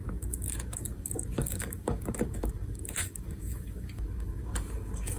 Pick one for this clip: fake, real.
fake